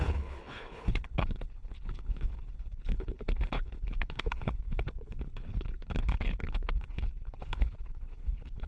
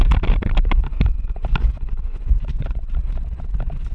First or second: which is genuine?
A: second